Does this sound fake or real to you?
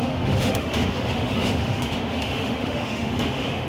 fake